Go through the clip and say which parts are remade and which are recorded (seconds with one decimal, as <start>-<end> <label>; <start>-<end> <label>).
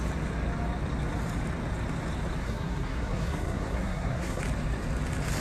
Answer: 0.0-2.4 recorded; 2.4-4.4 remade; 4.4-5.4 recorded